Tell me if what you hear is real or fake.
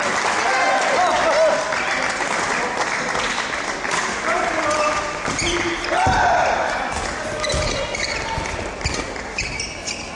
real